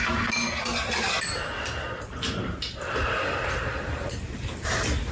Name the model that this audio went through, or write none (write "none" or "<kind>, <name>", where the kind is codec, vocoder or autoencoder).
none